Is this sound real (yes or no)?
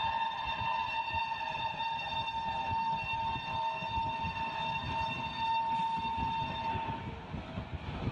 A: yes